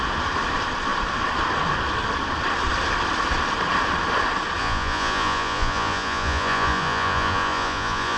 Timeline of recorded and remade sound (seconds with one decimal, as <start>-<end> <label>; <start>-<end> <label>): 0.0-4.6 recorded; 4.6-8.2 remade